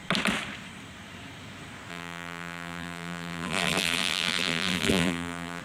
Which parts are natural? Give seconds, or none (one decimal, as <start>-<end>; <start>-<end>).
0.0-1.9